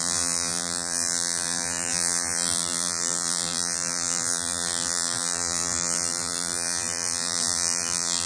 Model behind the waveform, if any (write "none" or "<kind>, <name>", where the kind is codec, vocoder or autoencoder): vocoder, BigVGAN v2